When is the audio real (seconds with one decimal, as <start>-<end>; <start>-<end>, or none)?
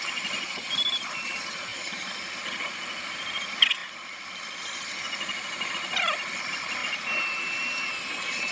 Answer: 0.0-8.5